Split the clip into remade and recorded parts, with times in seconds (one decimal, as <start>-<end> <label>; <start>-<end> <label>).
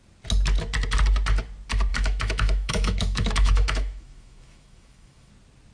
0.0-1.9 recorded; 1.9-5.3 remade; 5.3-5.7 recorded